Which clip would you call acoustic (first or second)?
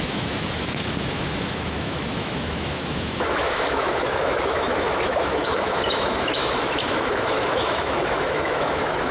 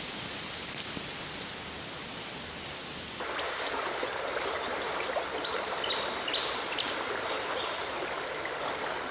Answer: second